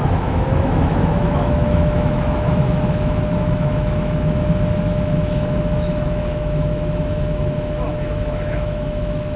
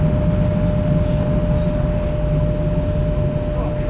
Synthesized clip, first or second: first